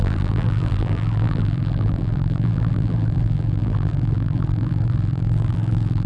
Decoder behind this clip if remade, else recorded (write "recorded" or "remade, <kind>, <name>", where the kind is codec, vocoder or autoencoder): remade, vocoder, BigVGAN v2